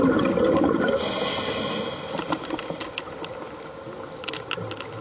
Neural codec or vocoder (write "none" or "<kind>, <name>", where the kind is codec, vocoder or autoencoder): none